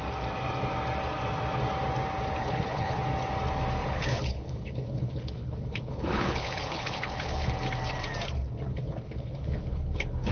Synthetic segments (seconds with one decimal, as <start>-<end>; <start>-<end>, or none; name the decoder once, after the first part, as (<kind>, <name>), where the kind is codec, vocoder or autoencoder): 2.4-3.0 (codec, HILCodec); 3.8-7.5; 8.7-10.3